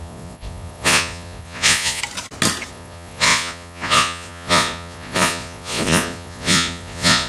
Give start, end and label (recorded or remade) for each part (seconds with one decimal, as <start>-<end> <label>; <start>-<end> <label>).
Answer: 0.0-2.0 remade; 2.0-2.7 recorded; 2.7-7.3 remade